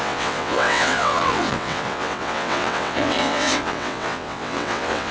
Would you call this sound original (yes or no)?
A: no